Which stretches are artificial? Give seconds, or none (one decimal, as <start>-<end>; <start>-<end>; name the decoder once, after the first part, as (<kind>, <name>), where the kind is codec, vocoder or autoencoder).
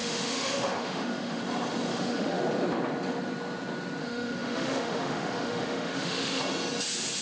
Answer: 0.0-1.4 (autoencoder, DAC-VAE); 1.9-2.4; 4.0-6.4